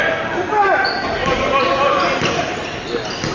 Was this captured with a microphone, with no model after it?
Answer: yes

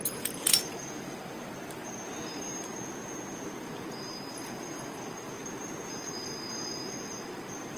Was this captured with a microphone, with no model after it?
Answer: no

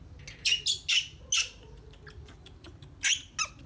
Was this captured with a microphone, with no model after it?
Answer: yes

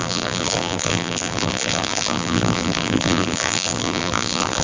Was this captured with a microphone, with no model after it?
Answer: no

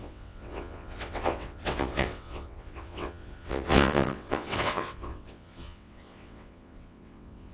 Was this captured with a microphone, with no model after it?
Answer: no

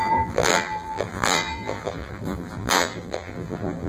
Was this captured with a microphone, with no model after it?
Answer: no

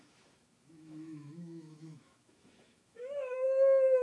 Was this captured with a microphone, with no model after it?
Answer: no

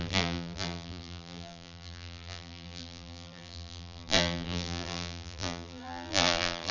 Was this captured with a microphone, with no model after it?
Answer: no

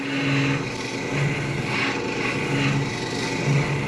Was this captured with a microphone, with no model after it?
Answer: yes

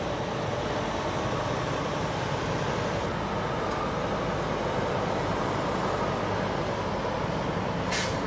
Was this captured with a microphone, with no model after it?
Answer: yes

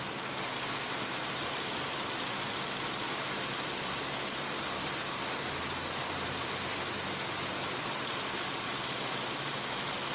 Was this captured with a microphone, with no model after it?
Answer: yes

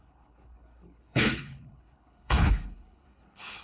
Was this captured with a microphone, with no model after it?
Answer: no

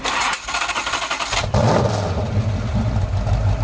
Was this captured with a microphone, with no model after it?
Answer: yes